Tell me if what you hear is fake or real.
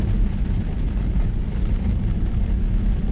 real